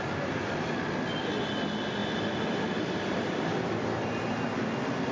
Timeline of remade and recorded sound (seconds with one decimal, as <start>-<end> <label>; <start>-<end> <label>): 0.0-2.0 recorded; 2.0-5.1 remade